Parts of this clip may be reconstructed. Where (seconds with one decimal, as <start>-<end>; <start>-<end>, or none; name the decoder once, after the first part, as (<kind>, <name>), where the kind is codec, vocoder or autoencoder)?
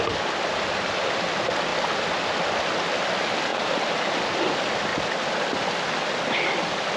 3.5-4.2 (vocoder, BigVGAN v2)